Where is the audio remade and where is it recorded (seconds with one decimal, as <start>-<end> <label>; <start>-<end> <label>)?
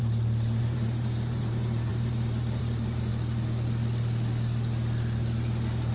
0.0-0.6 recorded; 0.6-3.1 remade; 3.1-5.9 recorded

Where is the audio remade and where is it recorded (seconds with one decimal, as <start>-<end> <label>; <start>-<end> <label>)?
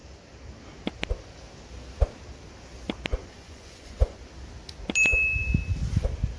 0.0-3.2 recorded; 3.2-4.2 remade; 4.2-6.4 recorded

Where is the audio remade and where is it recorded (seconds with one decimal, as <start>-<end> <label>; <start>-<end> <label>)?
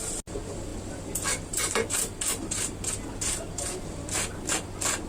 0.0-5.1 recorded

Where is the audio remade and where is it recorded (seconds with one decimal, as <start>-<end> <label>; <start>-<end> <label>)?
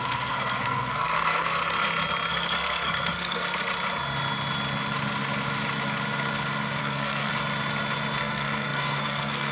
0.0-1.6 remade; 1.6-2.3 recorded; 2.3-3.7 remade; 3.7-6.8 recorded; 6.8-7.3 remade; 7.3-8.2 recorded; 8.2-9.5 remade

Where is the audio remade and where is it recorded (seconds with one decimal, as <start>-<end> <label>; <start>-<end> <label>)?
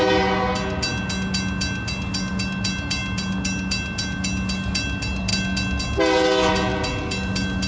0.0-7.7 recorded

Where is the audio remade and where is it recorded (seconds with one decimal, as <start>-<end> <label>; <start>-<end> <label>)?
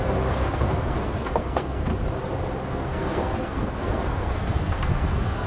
0.0-1.9 remade; 1.9-2.6 recorded; 2.6-5.5 remade